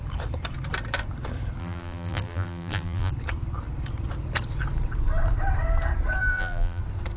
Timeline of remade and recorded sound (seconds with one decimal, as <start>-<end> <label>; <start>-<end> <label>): 0.0-1.6 recorded; 1.6-3.1 remade; 3.1-6.3 recorded; 6.3-6.8 remade; 6.8-7.2 recorded